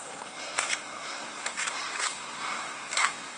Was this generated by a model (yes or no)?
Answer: yes